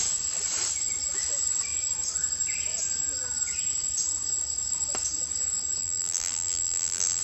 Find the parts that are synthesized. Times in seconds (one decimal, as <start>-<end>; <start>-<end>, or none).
5.8-7.2